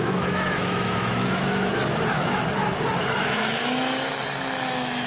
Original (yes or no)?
no